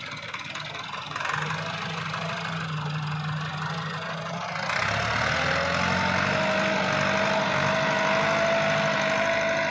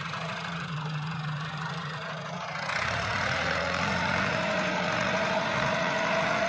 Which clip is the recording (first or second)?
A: first